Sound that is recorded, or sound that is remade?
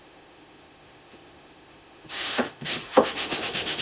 remade